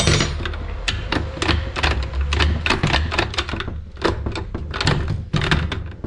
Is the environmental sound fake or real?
real